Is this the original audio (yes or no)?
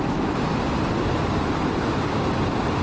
yes